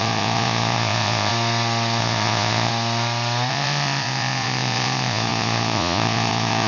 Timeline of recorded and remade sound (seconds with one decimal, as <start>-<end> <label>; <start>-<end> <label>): 0.0-1.3 remade; 1.3-2.0 recorded; 2.0-2.7 remade; 2.7-3.5 recorded; 3.5-6.7 remade